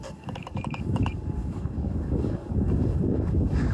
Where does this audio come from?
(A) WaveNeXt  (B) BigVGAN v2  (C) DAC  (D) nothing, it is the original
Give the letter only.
C